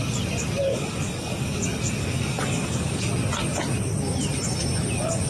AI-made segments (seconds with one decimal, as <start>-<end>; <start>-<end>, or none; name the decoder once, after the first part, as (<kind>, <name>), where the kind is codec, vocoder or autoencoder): 0.7-1.6 (codec, DAC); 2.0-3.1